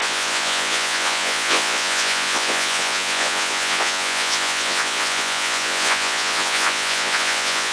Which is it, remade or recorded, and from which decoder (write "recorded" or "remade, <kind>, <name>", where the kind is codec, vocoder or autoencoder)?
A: remade, vocoder, Vocos